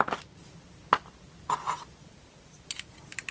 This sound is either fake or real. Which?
real